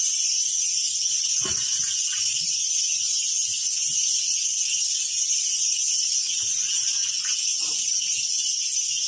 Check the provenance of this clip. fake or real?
real